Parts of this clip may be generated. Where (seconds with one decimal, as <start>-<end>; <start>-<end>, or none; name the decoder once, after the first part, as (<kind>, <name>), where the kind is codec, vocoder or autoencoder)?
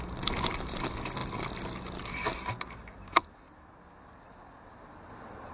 none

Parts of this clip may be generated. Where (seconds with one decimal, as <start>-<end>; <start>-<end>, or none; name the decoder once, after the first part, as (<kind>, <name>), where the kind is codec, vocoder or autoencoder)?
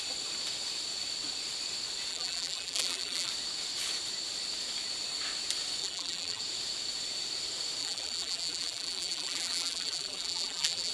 2.1-3.3 (vocoder, BigVGAN v2); 5.8-6.4; 7.8-10.9